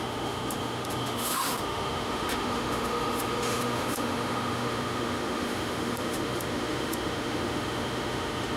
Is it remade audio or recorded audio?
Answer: remade